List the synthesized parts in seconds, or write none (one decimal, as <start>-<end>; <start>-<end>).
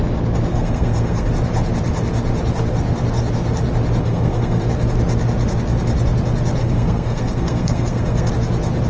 0.5-1.3; 4.0-4.6; 6.6-8.3